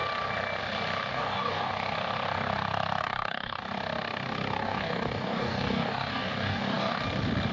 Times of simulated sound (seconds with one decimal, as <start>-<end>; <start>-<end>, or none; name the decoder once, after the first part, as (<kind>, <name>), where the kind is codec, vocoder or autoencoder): 1.1-1.7 (codec, DAC); 3.0-3.6; 4.6-7.0